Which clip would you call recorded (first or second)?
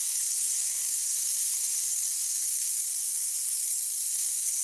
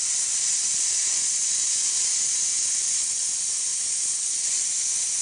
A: second